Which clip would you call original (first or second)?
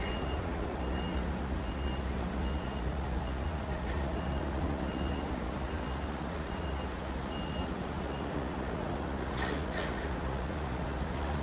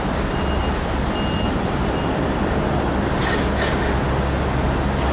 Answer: second